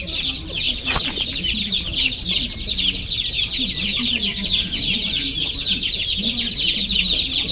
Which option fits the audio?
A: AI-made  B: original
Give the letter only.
B